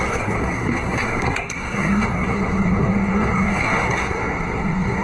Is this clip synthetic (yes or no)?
yes